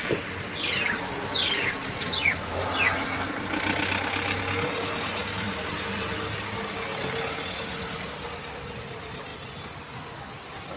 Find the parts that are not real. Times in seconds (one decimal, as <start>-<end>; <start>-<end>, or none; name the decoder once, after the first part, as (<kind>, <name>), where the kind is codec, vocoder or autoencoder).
none